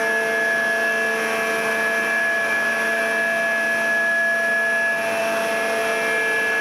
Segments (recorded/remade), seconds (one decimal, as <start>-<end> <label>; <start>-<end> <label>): 0.0-2.2 recorded; 2.2-3.0 remade; 3.0-6.6 recorded